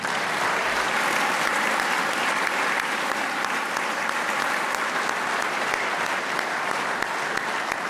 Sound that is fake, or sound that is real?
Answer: real